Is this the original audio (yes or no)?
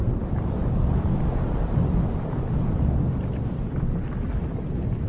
yes